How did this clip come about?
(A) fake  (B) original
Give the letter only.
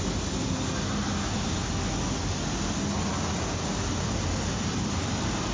B